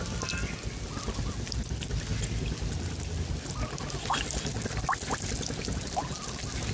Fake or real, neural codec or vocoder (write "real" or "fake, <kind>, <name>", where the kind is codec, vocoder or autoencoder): real